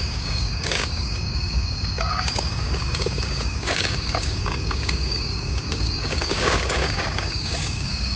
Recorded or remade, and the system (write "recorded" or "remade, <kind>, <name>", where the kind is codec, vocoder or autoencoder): remade, codec, DAC